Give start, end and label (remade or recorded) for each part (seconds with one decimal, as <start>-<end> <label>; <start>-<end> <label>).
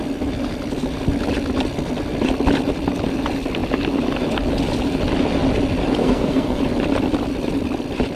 0.0-6.0 recorded; 6.0-6.6 remade; 6.6-8.2 recorded